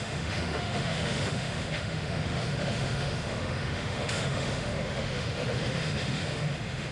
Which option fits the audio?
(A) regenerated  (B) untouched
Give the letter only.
A